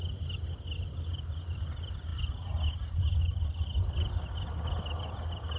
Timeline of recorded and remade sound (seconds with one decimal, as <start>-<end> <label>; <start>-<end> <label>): 0.0-5.6 recorded